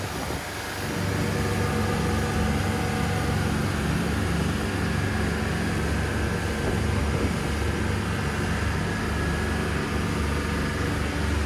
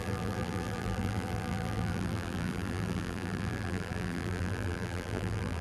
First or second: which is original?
first